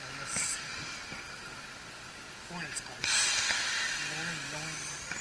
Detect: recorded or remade recorded